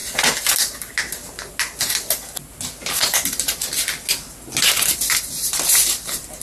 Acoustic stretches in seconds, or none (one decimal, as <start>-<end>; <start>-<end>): 0.0-6.4